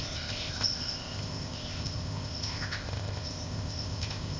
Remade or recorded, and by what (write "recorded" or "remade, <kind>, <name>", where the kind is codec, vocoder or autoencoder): remade, codec, ZipCodec